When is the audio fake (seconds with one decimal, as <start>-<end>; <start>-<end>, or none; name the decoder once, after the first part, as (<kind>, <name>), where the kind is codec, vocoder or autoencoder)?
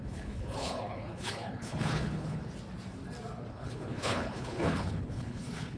0.0-2.4 (codec, HILCodec); 3.5-5.8